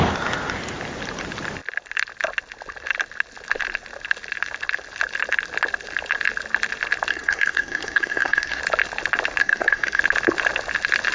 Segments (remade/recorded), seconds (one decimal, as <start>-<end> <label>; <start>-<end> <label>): 0.0-7.1 recorded; 7.1-8.6 remade; 8.6-9.4 recorded; 9.4-10.0 remade; 10.0-11.1 recorded